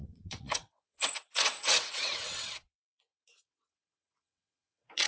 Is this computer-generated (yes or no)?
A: yes